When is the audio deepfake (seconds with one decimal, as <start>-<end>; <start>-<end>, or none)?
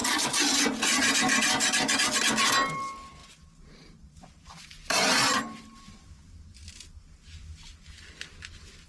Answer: 0.0-0.6; 3.2-6.5